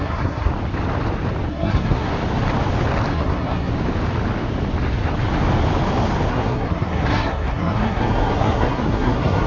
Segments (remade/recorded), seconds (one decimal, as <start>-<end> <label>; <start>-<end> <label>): 0.0-0.5 remade; 0.5-1.5 recorded; 1.5-2.1 remade; 2.1-3.1 recorded; 3.1-3.7 remade; 3.7-6.3 recorded; 6.3-9.5 remade